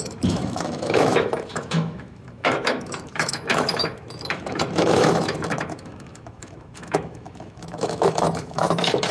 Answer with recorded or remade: remade